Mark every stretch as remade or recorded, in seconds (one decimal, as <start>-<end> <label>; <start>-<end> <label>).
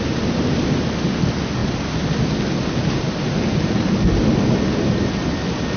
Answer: 0.0-5.8 recorded